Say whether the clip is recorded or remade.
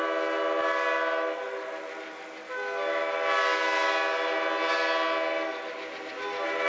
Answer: recorded